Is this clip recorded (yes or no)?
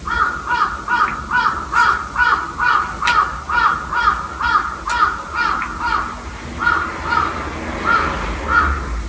yes